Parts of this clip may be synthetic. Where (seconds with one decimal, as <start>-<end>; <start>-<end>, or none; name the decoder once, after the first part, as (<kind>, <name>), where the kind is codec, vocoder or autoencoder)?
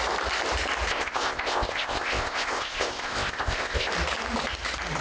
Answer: 0.9-3.9 (codec, ZipCodec)